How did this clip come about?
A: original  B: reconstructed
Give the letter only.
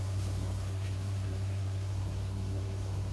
B